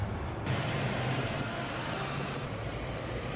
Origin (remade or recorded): recorded